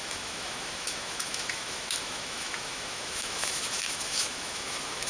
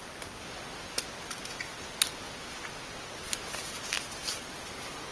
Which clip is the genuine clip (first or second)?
second